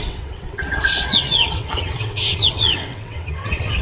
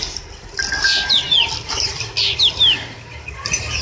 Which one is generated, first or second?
first